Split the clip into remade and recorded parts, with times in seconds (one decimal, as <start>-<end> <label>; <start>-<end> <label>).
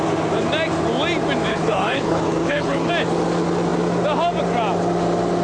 0.0-1.5 recorded; 1.5-2.9 remade; 2.9-5.4 recorded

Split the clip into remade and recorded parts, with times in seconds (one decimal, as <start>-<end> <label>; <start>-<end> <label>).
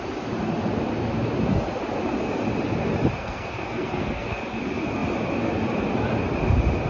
0.0-3.2 recorded; 3.2-4.4 remade; 4.4-6.9 recorded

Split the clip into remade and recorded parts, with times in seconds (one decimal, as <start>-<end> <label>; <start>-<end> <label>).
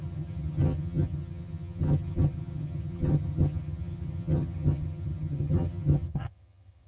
0.0-6.9 remade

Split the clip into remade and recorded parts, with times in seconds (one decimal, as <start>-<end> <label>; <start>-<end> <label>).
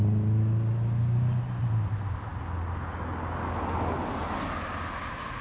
0.0-5.4 recorded